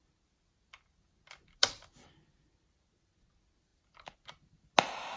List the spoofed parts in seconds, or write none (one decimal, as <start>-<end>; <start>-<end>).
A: none